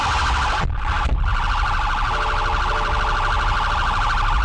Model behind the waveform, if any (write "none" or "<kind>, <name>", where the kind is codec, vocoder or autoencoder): none